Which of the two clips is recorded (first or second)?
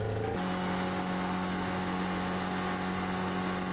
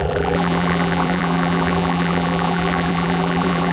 first